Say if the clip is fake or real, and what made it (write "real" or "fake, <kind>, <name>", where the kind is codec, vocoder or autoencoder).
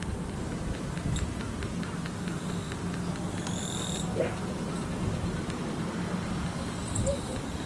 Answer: real